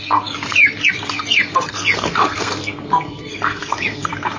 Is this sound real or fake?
fake